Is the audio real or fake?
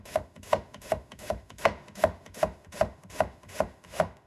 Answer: fake